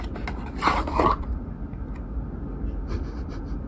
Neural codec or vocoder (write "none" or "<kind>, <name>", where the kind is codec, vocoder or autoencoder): none